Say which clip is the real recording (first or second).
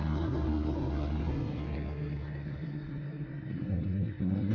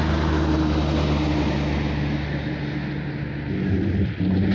second